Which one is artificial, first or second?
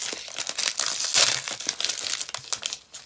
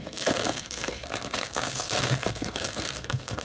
second